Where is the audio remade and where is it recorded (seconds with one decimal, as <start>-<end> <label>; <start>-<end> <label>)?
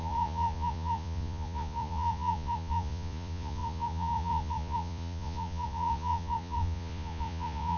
0.0-7.8 remade